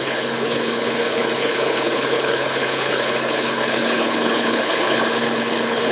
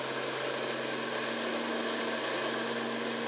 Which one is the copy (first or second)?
first